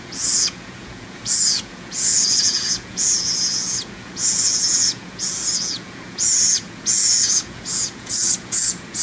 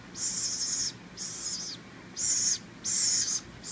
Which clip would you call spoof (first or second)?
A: first